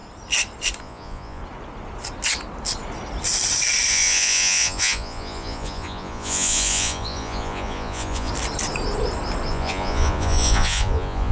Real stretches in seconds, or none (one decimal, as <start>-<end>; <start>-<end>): 0.0-0.8; 1.4-3.9; 8.3-9.5